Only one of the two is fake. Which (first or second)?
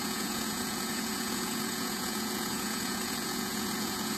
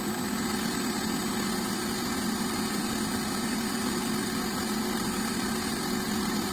first